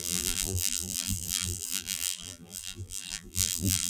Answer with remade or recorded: remade